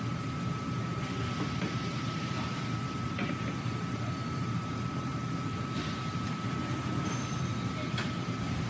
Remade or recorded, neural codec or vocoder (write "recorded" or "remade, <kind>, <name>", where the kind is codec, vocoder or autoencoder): remade, vocoder, BigVGAN v2